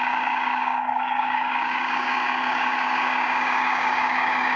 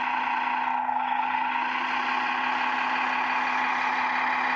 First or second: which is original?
second